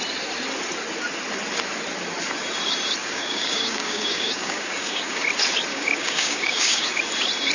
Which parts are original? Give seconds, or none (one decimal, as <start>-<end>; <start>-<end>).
0.0-3.0; 5.2-5.7; 7.0-7.5